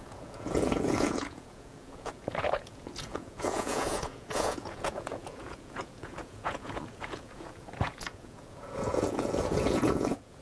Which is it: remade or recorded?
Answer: remade